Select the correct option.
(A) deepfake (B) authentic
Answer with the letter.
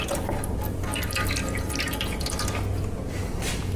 B